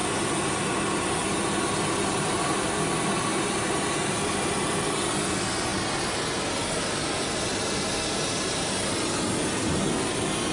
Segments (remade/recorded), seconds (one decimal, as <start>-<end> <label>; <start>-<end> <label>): 0.0-10.5 recorded